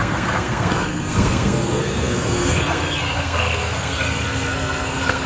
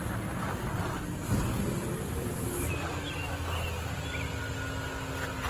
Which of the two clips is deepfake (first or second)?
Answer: first